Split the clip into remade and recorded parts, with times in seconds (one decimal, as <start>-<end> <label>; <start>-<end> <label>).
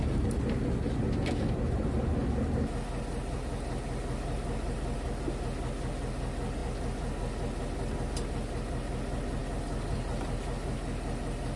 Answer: 0.0-11.6 recorded